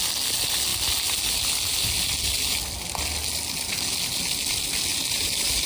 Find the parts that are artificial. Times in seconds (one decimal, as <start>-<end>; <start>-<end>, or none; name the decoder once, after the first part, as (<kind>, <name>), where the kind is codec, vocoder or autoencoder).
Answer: 4.9-5.7 (vocoder, BigVGAN v2)